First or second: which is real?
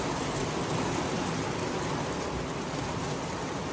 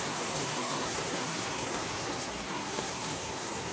first